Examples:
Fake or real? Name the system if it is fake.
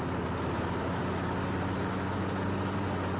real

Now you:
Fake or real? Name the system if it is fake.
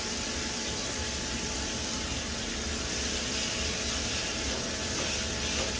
real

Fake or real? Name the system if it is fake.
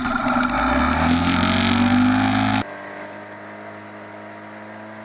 real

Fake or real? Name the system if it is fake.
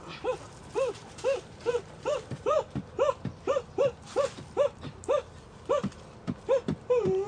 fake, vocoder, BigVGAN v2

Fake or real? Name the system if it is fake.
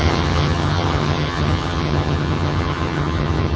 fake, vocoder, HiFi-GAN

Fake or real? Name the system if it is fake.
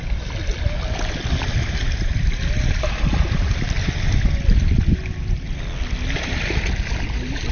real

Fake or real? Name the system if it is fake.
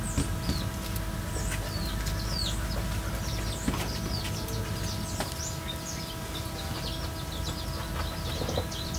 real